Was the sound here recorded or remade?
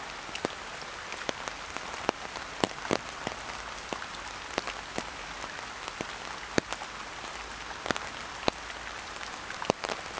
recorded